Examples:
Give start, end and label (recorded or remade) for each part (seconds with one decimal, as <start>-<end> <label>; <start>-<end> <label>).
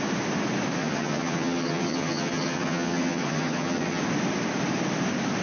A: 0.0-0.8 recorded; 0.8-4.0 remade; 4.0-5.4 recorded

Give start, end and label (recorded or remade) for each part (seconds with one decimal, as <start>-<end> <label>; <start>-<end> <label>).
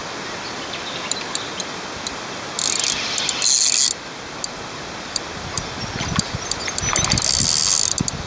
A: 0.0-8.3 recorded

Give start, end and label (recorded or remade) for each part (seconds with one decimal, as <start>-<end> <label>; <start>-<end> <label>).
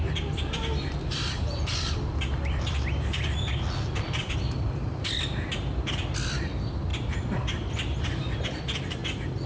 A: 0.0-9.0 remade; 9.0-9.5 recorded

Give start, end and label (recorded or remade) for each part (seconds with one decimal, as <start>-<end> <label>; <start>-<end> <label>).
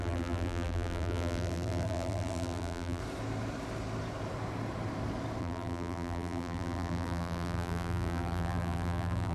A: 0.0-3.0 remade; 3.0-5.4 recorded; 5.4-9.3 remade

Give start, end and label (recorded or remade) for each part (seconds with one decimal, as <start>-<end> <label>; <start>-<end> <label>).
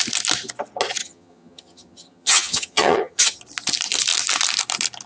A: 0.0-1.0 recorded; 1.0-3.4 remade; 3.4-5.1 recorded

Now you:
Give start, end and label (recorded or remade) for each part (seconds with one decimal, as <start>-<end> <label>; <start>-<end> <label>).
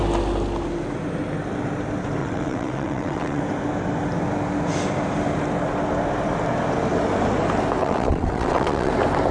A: 0.0-2.2 recorded; 2.2-3.4 remade; 3.4-7.8 recorded; 7.8-8.9 remade; 8.9-9.3 recorded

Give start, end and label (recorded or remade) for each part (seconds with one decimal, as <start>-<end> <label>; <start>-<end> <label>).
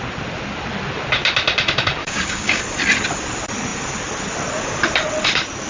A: 0.0-2.0 recorded; 2.0-2.6 remade; 2.6-5.7 recorded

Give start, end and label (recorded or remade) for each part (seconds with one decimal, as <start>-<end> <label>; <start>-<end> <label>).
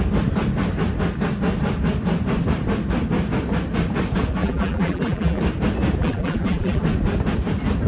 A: 0.0-4.4 recorded; 4.4-5.4 remade; 5.4-6.0 recorded; 6.0-6.8 remade; 6.8-7.9 recorded